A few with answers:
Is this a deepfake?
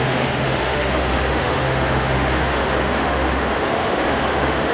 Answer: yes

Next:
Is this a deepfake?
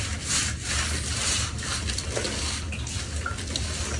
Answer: no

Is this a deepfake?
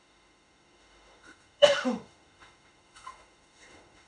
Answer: yes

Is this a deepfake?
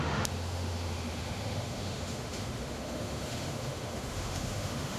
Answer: yes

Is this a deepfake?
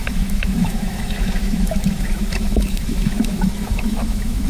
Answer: yes